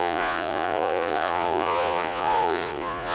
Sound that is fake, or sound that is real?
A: fake